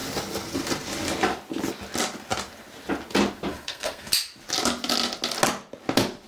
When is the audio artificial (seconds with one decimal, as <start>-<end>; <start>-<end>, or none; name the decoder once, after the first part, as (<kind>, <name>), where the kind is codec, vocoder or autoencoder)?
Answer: 3.5-4.1 (codec, SNAC)